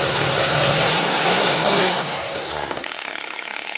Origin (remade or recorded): remade